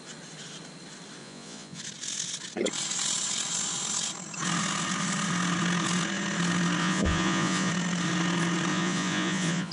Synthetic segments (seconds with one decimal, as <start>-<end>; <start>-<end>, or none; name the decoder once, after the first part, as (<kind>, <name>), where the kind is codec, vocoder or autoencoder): 1.2-1.8 (vocoder, Vocos); 6.8-7.7; 8.7-9.7